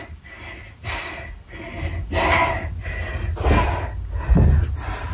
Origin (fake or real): real